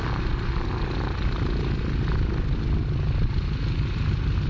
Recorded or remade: recorded